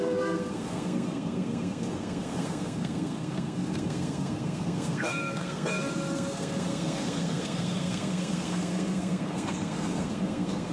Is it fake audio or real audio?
fake